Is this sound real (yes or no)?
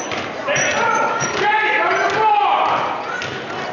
yes